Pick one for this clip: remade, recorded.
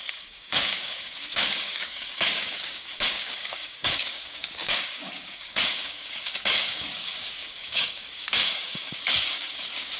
remade